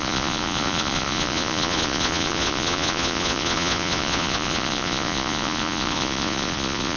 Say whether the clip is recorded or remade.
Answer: remade